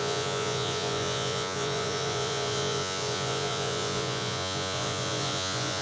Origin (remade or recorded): remade